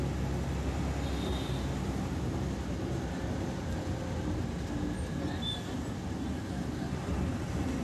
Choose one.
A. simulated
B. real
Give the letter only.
B